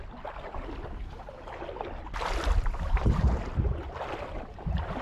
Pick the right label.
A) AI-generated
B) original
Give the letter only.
B